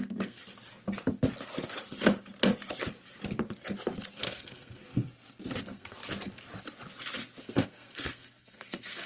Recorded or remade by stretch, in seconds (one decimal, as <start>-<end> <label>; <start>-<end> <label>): 0.0-0.4 remade; 0.4-4.2 recorded; 4.2-4.8 remade; 4.8-5.6 recorded; 5.6-6.0 remade; 6.0-7.4 recorded; 7.4-9.1 remade